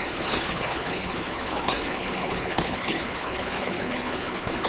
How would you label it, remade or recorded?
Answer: remade